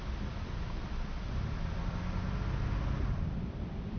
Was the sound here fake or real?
real